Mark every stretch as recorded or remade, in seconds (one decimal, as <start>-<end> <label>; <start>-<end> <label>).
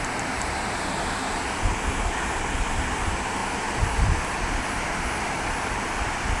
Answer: 0.0-6.4 recorded